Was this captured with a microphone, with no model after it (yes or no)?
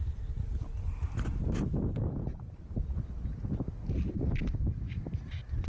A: yes